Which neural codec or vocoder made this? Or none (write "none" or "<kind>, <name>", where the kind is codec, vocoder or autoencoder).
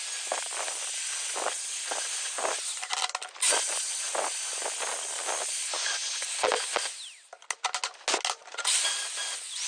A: none